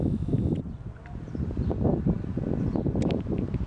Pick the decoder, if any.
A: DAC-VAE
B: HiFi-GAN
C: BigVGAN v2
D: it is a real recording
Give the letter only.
D